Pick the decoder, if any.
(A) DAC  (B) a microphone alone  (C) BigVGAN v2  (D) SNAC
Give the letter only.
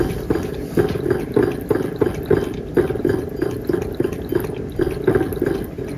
B